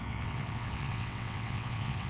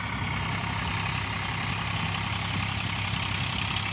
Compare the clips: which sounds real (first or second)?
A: second